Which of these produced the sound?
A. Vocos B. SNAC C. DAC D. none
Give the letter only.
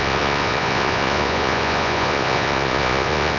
A